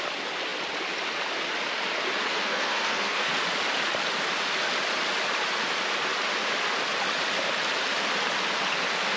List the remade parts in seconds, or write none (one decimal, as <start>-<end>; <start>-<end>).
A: 2.3-3.4